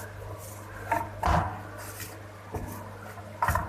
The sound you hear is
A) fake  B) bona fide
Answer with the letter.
B